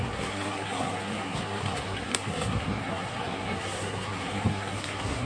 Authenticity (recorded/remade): remade